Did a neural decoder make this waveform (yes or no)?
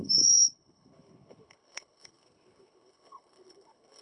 yes